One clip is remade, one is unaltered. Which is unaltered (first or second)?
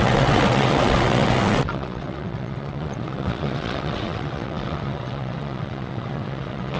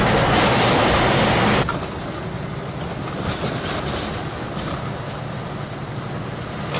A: second